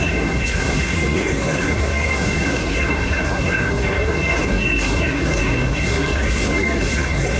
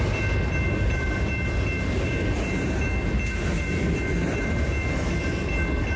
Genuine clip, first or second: second